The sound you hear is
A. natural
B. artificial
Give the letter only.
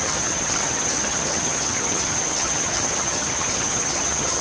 B